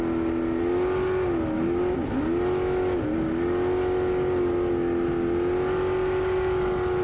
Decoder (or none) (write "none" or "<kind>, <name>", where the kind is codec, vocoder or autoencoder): none